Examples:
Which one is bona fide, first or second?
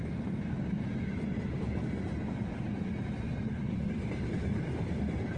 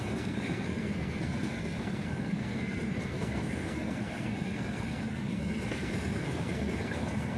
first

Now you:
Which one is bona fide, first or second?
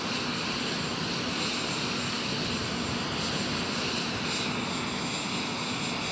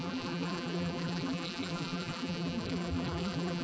first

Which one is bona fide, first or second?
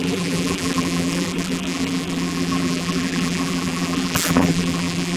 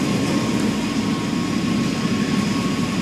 second